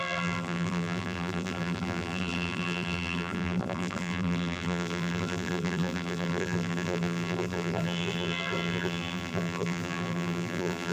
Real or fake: fake